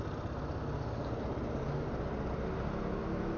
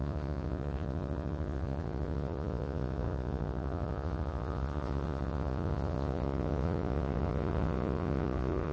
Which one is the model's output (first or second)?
second